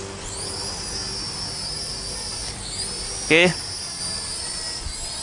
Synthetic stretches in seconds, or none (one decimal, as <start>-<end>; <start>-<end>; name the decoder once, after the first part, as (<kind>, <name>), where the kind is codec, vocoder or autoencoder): 2.3-2.9 (vocoder, BigVGAN v2); 3.5-4.0

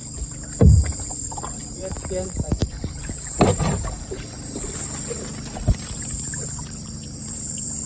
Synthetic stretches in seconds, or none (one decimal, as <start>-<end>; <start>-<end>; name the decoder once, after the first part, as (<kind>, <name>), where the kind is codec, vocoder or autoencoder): 1.1-7.9 (vocoder, BigVGAN v2)

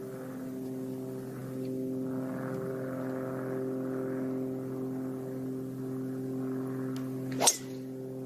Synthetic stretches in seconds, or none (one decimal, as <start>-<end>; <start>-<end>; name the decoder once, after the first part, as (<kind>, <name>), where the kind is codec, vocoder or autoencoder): none

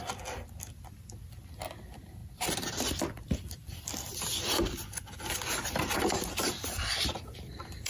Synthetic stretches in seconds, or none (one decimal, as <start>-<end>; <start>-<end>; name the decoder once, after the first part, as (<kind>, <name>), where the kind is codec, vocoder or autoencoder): 0.0-7.9 (vocoder, BigVGAN v2)

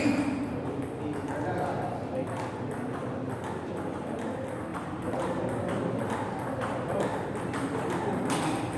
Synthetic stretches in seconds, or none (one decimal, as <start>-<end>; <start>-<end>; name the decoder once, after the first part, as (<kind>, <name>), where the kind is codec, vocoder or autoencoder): 4.7-5.4 (vocoder, BigVGAN v2); 7.1-8.4

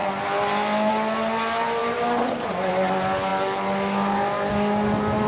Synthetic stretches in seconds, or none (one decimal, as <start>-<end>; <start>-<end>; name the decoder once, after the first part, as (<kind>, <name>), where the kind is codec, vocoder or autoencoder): 1.8-2.5 (vocoder, BigVGAN v2)

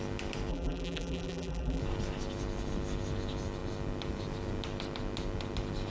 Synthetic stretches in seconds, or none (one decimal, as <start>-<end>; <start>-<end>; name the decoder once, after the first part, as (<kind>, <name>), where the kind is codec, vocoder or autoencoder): 0.5-1.8 (vocoder, BigVGAN v2)

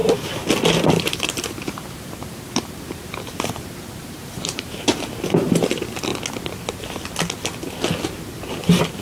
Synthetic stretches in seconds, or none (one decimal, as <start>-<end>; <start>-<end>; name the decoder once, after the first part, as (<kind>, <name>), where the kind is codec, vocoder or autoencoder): 0.8-6.1 (vocoder, BigVGAN v2); 8.5-9.0